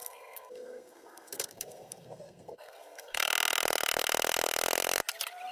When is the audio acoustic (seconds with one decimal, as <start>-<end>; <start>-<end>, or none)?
3.3-5.5